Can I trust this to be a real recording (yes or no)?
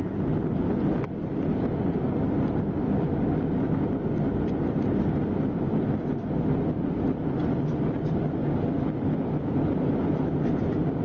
yes